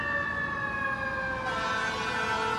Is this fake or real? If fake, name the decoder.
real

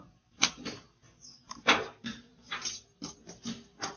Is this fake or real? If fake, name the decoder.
fake, vocoder, BigVGAN v2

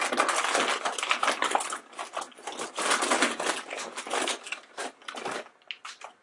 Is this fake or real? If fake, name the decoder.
real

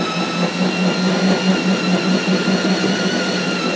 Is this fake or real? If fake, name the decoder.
real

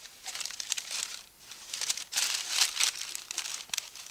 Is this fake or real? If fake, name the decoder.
fake, vocoder, BigVGAN v2